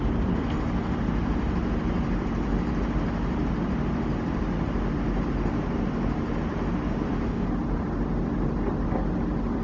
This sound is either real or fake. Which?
real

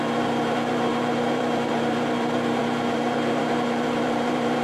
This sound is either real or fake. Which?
fake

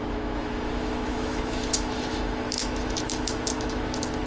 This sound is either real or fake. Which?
fake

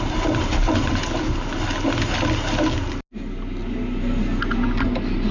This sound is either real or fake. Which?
real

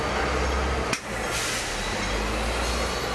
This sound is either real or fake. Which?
real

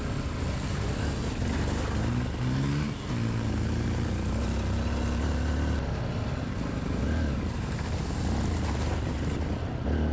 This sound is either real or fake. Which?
real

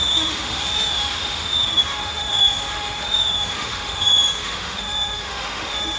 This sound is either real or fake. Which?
fake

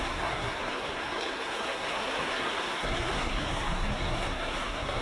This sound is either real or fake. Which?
fake